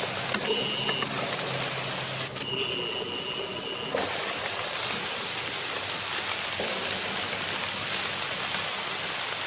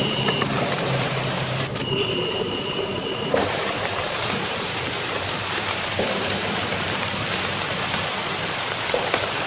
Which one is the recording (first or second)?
first